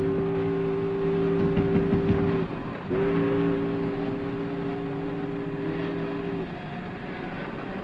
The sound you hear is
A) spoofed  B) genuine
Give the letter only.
B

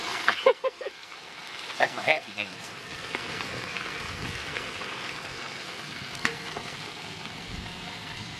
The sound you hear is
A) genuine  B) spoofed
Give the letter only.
B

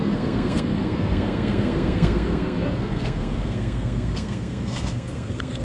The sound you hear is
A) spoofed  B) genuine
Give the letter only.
A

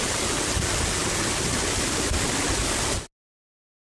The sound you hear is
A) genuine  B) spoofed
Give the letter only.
A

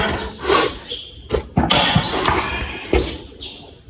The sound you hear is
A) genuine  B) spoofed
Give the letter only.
A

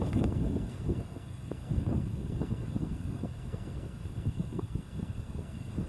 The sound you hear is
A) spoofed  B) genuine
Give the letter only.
A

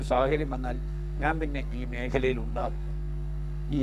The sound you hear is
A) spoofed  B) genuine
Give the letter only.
A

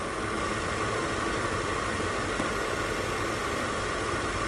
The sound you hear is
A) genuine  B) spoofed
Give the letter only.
A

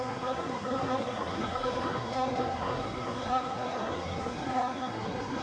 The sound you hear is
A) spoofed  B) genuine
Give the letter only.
A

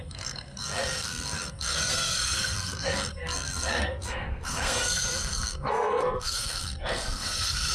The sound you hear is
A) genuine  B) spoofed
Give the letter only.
B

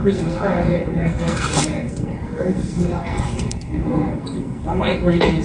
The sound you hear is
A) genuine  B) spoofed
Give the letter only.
B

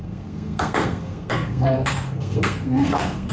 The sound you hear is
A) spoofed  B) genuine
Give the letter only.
A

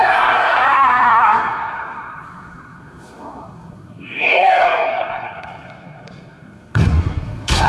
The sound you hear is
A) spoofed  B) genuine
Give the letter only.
A